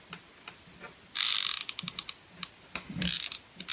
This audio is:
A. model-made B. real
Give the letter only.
B